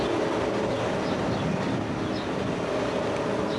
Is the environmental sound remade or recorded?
recorded